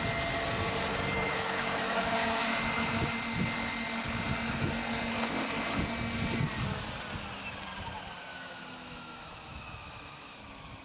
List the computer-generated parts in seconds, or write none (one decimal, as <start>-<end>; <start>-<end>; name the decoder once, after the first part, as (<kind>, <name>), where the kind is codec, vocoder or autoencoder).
0.9-3.1 (autoencoder, DAC-VAE); 8.3-10.4